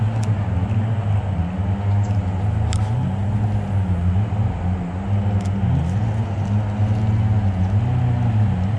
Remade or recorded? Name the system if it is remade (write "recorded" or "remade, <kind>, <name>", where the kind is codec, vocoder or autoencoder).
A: recorded